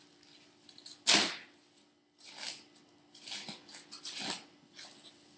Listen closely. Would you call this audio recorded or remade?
recorded